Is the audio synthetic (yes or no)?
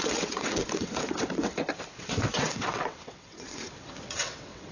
yes